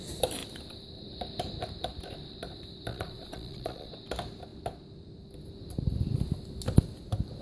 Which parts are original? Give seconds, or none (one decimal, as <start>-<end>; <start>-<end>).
0.0-2.9; 3.9-7.4